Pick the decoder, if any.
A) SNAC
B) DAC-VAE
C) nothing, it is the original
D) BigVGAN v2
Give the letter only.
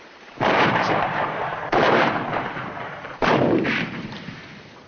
D